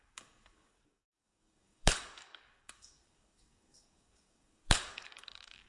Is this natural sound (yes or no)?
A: no